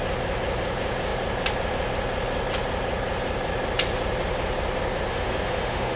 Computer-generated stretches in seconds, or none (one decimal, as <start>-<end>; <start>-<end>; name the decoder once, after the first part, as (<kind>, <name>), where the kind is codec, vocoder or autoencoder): 5.1-6.0 (autoencoder, DAC-VAE)